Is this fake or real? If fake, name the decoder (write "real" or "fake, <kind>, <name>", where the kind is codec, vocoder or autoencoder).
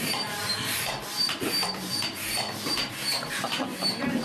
fake, vocoder, BigVGAN v2